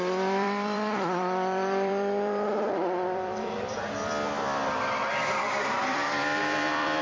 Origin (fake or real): fake